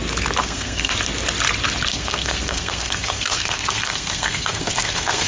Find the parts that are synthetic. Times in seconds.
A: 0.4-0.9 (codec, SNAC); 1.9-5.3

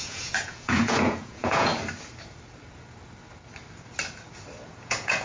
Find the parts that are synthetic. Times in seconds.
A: 0.0-1.7 (vocoder, Vocos); 4.8-5.2

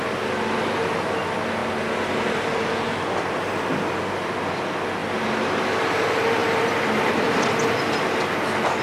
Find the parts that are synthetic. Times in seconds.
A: 5.0-5.8 (vocoder, BigVGAN v2); 6.4-7.8

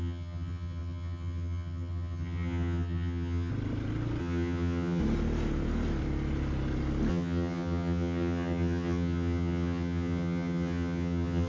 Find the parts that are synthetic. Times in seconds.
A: 0.0-3.5 (vocoder, HiFi-GAN); 4.2-5.0; 7.1-11.5

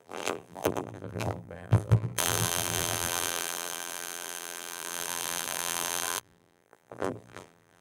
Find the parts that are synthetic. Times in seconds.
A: 0.0-7.8 (vocoder, BigVGAN v2)

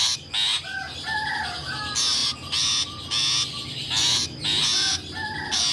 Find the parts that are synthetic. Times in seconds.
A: none